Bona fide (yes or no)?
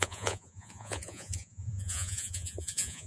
no